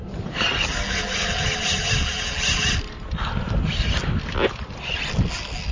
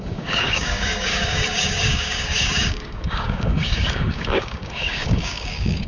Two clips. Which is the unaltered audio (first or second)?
first